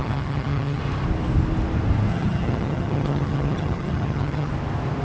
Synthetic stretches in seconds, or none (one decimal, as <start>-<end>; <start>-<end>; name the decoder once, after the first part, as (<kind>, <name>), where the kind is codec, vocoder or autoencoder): 0.0-0.8 (vocoder, HiFi-GAN); 2.1-4.5